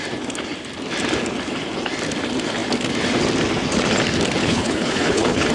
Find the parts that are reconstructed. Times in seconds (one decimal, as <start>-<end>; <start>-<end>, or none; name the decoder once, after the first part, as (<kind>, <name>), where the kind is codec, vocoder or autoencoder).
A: 4.4-5.5 (codec, HILCodec)